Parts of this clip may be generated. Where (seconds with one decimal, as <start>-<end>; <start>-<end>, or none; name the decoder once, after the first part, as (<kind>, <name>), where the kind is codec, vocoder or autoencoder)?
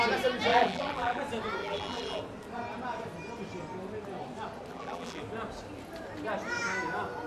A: 0.5-1.2 (vocoder, BigVGAN v2); 1.6-2.2; 4.7-5.2